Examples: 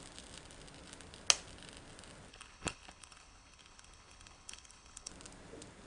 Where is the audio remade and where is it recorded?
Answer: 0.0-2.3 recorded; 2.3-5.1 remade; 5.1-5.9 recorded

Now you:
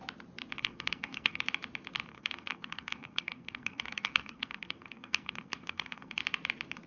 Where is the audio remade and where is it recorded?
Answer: 0.0-0.6 recorded; 0.6-1.4 remade; 1.4-2.1 recorded; 2.1-6.2 remade; 6.2-6.9 recorded

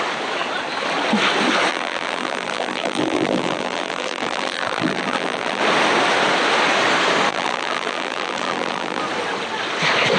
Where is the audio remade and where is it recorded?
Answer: 0.0-1.7 recorded; 1.7-5.6 remade; 5.6-7.3 recorded; 7.3-9.0 remade; 9.0-10.2 recorded

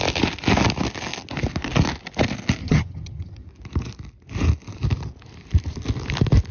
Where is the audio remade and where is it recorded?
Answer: 0.0-2.6 recorded; 2.6-3.5 remade; 3.5-6.5 recorded

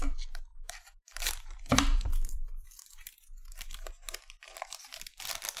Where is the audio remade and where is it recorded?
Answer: 0.0-0.5 recorded; 0.5-3.9 remade; 3.9-5.6 recorded